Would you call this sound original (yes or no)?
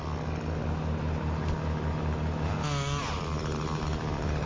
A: yes